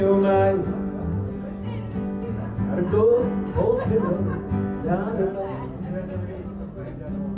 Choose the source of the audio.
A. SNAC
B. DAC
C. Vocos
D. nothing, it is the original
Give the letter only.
D